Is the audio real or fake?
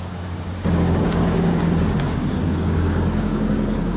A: fake